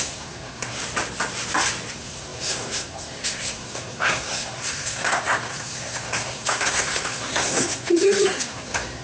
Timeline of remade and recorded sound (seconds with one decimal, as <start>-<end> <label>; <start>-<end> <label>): 0.0-0.8 remade; 0.8-1.9 recorded; 1.9-9.0 remade